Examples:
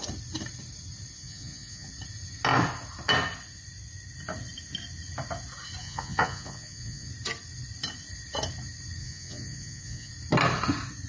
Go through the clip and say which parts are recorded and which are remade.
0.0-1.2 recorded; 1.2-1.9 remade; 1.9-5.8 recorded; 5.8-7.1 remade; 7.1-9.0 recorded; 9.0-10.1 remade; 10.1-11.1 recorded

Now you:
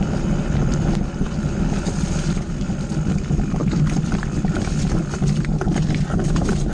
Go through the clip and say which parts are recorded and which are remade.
0.0-6.7 recorded

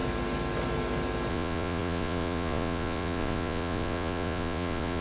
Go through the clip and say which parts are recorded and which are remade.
0.0-1.3 recorded; 1.3-5.0 remade

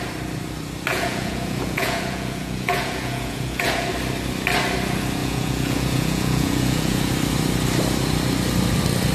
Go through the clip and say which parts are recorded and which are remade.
0.0-0.9 recorded; 0.9-3.9 remade; 3.9-5.2 recorded; 5.2-7.1 remade; 7.1-9.1 recorded

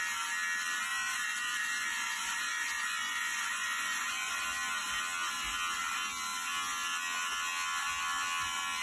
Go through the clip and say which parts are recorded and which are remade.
0.0-0.9 recorded; 0.9-4.4 remade; 4.4-8.8 recorded

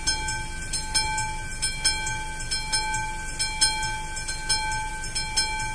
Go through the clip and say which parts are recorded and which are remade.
0.0-5.7 recorded

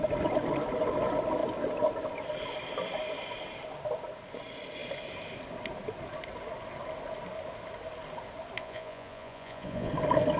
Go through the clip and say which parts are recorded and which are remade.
0.0-8.6 recorded; 8.6-9.9 remade; 9.9-10.4 recorded